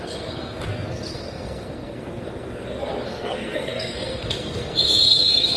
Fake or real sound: fake